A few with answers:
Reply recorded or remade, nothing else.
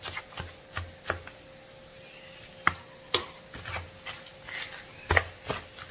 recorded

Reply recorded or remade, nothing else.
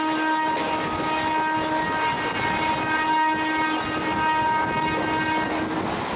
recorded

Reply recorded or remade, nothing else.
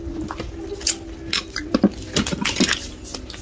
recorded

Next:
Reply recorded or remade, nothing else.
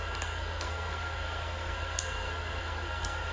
remade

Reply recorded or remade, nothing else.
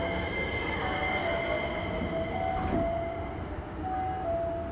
recorded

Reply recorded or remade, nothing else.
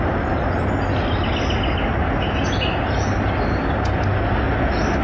recorded